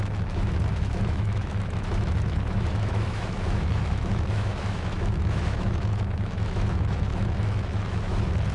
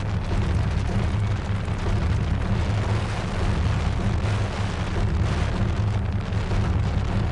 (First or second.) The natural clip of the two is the second